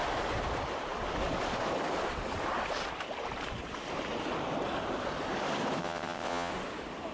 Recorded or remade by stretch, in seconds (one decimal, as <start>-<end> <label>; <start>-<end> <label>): 0.0-5.8 recorded; 5.8-6.5 remade; 6.5-7.1 recorded